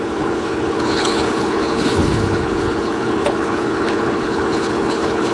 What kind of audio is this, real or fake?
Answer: fake